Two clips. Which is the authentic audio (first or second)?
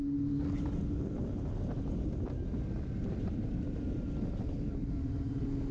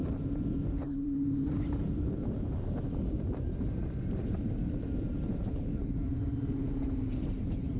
first